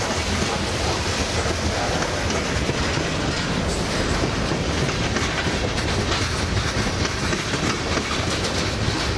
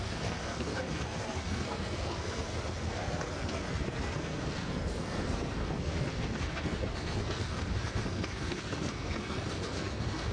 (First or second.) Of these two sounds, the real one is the first